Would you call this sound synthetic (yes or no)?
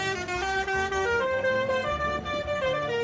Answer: no